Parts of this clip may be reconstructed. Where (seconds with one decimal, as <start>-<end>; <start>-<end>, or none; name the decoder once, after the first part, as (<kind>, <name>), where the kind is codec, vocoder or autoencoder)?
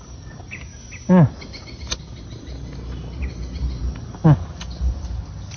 none